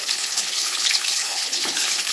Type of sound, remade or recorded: remade